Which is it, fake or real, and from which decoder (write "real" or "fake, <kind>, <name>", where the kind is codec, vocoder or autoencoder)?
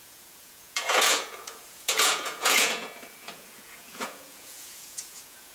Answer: fake, vocoder, Vocos